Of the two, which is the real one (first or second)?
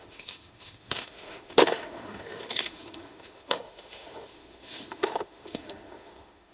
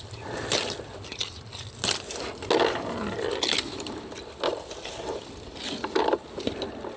second